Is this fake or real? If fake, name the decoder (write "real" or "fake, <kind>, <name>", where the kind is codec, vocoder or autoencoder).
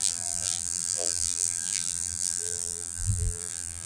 fake, vocoder, BigVGAN v2